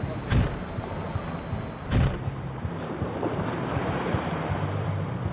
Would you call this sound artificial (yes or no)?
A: yes